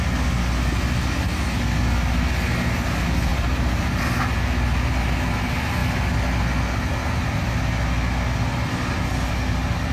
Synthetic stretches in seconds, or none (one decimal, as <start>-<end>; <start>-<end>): 3.3-4.0